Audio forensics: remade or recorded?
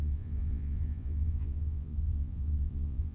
remade